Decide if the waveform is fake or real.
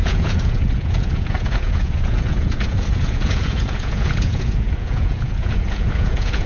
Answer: fake